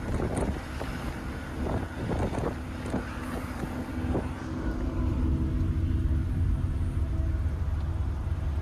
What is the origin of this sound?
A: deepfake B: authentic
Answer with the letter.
B